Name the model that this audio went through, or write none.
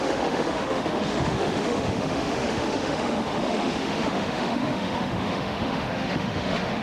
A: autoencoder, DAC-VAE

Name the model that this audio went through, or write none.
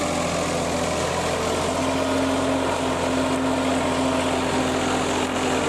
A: none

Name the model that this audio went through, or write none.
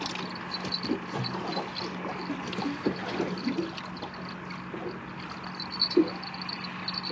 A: none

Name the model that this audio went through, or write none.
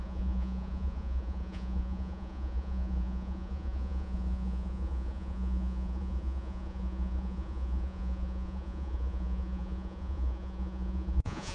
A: vocoder, Vocos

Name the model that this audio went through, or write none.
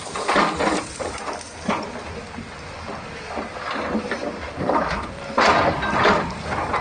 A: none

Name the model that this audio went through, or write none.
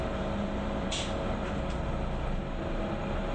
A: none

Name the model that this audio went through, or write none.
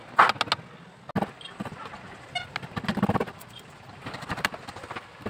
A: none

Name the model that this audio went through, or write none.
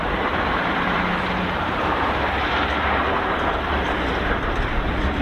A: vocoder, BigVGAN v2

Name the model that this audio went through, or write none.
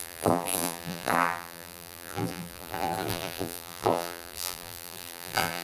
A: vocoder, BigVGAN v2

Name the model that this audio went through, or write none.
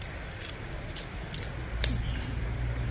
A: none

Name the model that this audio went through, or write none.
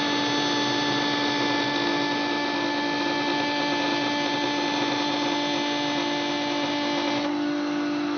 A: none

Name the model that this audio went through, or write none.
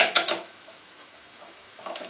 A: autoencoder, DAC-VAE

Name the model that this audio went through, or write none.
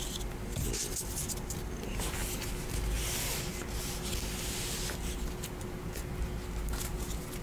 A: none